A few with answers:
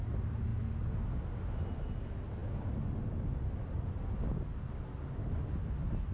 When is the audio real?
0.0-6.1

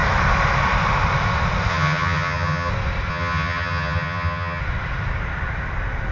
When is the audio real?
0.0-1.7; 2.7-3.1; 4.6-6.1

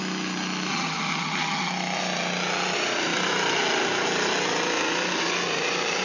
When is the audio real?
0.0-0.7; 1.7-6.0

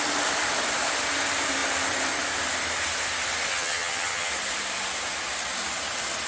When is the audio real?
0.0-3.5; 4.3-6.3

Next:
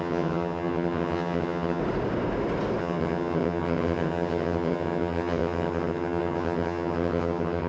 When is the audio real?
1.8-2.8

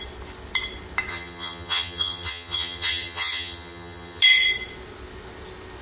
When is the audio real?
0.0-1.1; 4.2-5.8

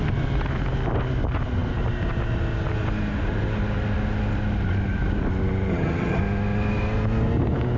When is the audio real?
0.0-5.7; 6.2-7.8